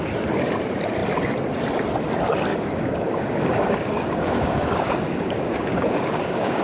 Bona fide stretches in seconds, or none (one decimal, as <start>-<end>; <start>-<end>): 0.0-2.5